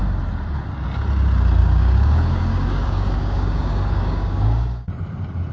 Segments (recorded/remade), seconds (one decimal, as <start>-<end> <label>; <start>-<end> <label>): 0.0-1.6 recorded; 1.6-4.9 remade; 4.9-5.5 recorded